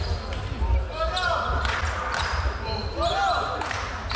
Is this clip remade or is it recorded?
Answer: recorded